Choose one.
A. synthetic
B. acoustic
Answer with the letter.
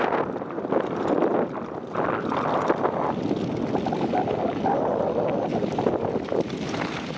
B